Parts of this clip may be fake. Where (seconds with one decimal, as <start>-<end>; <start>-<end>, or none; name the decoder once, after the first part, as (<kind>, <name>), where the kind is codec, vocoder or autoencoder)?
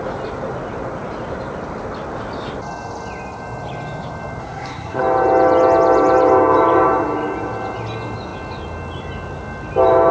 4.4-5.0 (codec, SNAC)